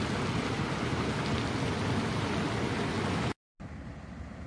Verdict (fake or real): real